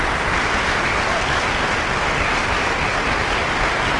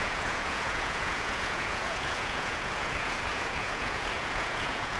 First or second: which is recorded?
first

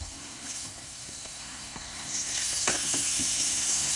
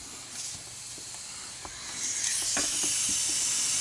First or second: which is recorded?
second